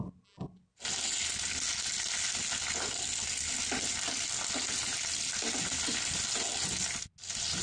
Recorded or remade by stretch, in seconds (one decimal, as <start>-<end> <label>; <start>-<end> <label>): 0.0-7.6 recorded